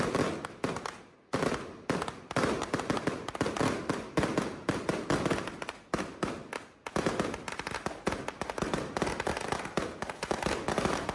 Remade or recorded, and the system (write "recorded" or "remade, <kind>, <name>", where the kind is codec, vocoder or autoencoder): recorded